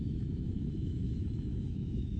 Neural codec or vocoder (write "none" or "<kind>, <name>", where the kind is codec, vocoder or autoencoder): autoencoder, DAC-VAE